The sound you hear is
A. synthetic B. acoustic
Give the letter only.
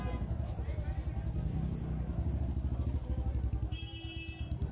B